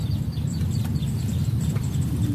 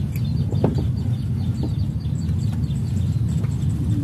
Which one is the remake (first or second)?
first